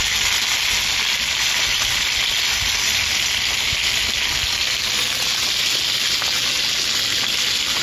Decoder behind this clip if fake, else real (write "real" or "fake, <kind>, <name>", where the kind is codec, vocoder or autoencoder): real